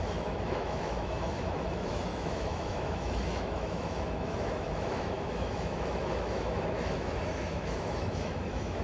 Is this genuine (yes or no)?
no